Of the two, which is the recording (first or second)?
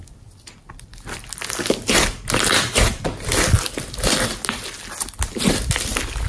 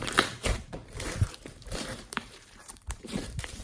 first